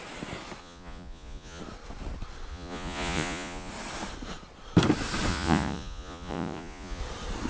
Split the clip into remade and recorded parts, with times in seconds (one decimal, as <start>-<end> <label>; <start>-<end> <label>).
0.0-0.6 recorded; 0.6-1.6 remade; 1.6-2.5 recorded; 2.5-3.7 remade; 3.7-5.3 recorded; 5.3-7.0 remade; 7.0-7.5 recorded

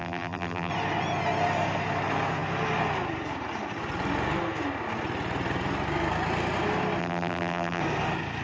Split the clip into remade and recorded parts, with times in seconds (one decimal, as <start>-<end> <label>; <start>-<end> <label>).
0.0-0.7 remade; 0.7-7.0 recorded; 7.0-7.8 remade; 7.8-8.4 recorded

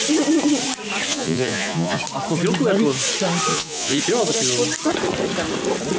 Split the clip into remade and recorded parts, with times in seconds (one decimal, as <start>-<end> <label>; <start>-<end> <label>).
0.0-1.1 recorded; 1.1-2.0 remade; 2.0-3.5 recorded; 3.5-4.0 remade; 4.0-6.0 recorded

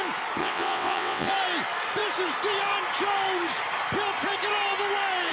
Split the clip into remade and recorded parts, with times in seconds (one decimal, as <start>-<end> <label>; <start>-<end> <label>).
0.0-0.4 recorded; 0.4-1.3 remade; 1.3-5.3 recorded

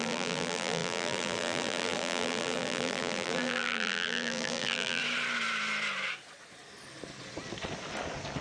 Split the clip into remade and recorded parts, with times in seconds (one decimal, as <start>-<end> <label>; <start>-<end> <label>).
0.0-5.0 remade; 5.0-8.4 recorded

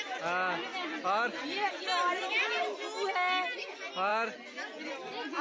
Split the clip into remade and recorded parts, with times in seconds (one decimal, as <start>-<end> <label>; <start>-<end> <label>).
0.0-5.4 recorded